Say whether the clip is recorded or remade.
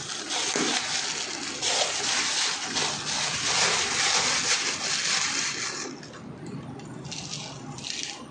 recorded